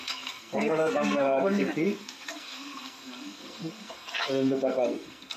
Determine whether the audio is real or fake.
fake